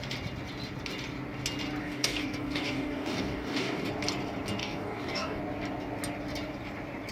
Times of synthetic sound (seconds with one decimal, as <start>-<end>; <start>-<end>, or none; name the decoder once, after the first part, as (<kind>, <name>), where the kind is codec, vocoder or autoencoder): 1.8-3.9 (codec, DAC); 4.6-5.4